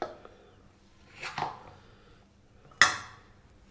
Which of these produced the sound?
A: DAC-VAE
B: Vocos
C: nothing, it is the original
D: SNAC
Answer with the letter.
C